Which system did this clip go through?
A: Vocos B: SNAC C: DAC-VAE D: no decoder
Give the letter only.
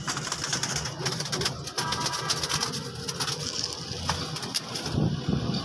D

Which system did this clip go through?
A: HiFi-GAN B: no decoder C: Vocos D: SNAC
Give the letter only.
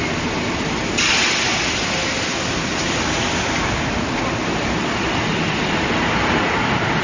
B